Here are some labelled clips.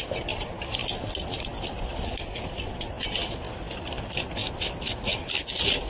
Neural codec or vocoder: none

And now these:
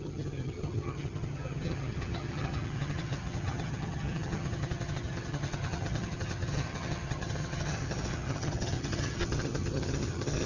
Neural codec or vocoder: vocoder, HiFi-GAN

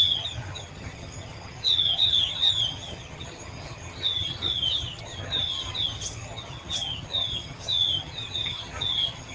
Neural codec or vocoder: vocoder, HiFi-GAN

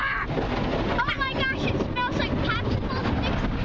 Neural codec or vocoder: none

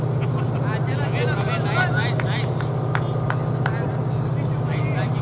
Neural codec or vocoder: none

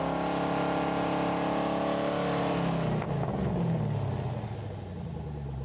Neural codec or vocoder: none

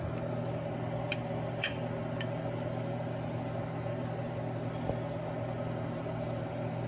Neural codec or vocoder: none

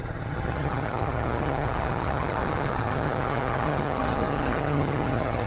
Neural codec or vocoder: vocoder, HiFi-GAN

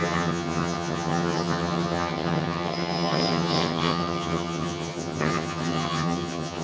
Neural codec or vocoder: vocoder, HiFi-GAN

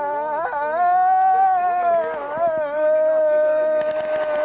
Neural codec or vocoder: none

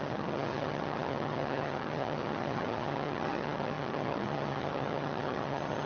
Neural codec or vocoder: vocoder, HiFi-GAN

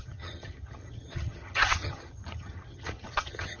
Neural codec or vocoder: vocoder, HiFi-GAN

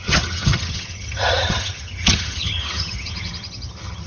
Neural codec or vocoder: vocoder, HiFi-GAN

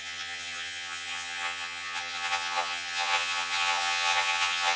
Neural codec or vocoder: vocoder, HiFi-GAN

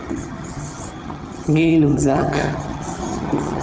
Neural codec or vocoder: vocoder, HiFi-GAN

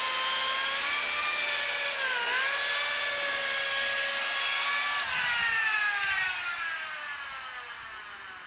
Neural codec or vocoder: none